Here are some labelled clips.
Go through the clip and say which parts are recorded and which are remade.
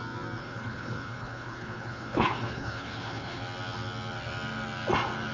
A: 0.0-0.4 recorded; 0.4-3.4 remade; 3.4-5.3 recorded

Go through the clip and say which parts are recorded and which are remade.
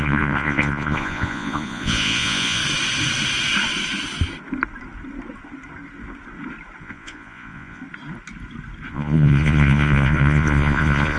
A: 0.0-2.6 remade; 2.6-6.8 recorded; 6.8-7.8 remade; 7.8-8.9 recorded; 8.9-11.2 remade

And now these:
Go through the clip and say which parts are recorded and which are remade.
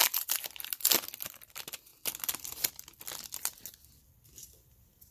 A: 0.0-5.1 recorded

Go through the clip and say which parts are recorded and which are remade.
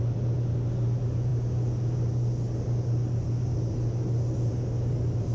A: 0.0-5.3 recorded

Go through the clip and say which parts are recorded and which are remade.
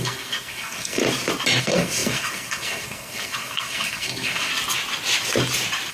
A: 0.0-1.0 remade; 1.0-1.6 recorded; 1.6-4.5 remade; 4.5-5.9 recorded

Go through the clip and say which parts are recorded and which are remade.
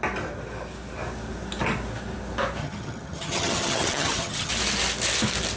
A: 0.0-2.6 recorded; 2.6-4.5 remade; 4.5-5.6 recorded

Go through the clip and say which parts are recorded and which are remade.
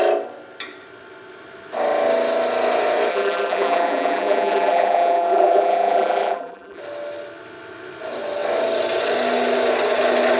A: 0.0-3.1 recorded; 3.1-6.8 remade; 6.8-10.4 recorded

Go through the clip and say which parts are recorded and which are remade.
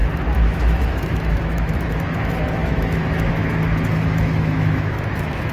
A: 0.0-5.5 remade